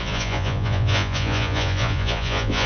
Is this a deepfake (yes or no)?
yes